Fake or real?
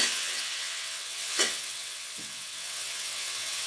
fake